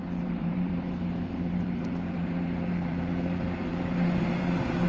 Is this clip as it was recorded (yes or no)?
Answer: no